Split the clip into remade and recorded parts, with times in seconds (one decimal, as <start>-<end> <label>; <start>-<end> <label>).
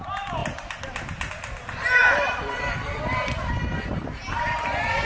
0.0-5.1 recorded